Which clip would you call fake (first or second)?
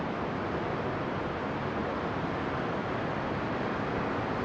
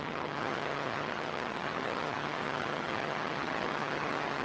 second